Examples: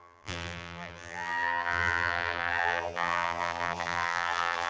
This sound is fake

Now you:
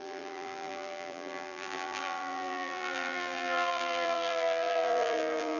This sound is fake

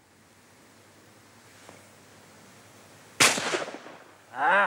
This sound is real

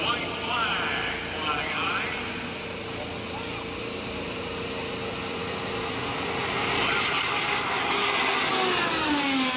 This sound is real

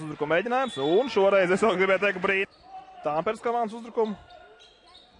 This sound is real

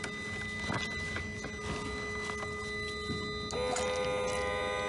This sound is real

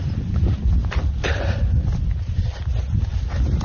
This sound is real